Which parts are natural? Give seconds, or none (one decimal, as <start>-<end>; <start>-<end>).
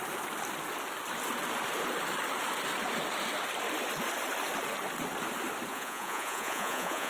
0.0-5.7